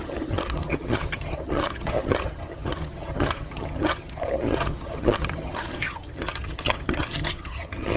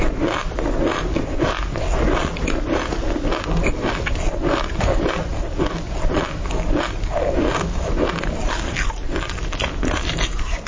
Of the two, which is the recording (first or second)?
second